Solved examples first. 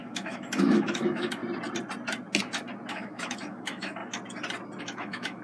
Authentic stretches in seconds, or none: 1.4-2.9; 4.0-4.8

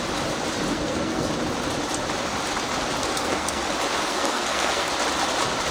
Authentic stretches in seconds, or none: 0.0-0.7; 1.3-3.0; 3.6-4.0; 4.9-5.7

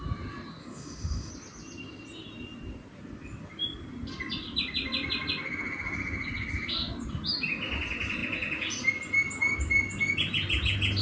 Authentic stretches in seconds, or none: 0.0-0.6; 1.3-11.0